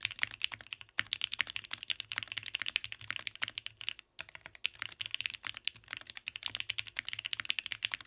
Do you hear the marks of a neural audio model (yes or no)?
no